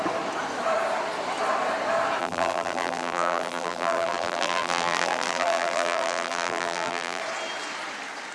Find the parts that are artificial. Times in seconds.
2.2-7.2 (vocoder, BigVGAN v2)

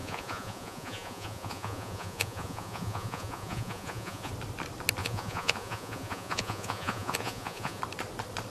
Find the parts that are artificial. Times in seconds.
0.0-4.3 (vocoder, Vocos); 5.0-7.8

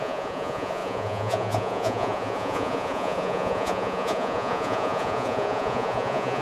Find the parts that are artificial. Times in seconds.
0.0-6.4 (vocoder, Vocos)

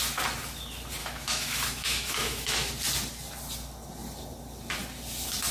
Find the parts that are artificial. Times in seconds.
1.0-2.7 (autoencoder, DAC-VAE)

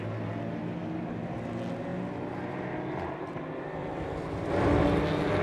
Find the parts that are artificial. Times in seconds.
1.9-2.6 (vocoder, BigVGAN v2); 3.8-4.8

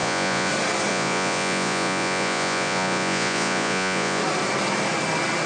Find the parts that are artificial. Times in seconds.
0.0-0.5 (vocoder, Vocos); 0.9-4.2

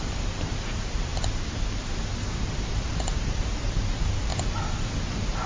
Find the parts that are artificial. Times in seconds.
0.0-1.1 (vocoder, BigVGAN v2); 2.1-4.3

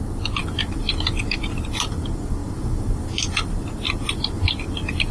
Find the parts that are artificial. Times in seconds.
none